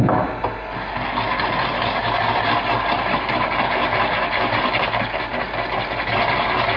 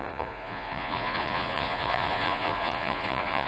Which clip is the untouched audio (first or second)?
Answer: first